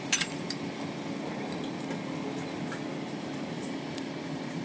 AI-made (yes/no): no